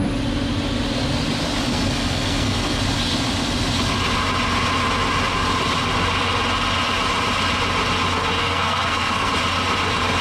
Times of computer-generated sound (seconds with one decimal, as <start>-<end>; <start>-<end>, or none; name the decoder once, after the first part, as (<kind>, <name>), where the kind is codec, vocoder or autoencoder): 1.7-2.8 (codec, SNAC); 8.4-9.3